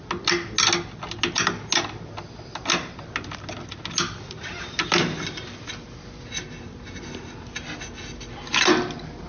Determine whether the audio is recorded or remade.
recorded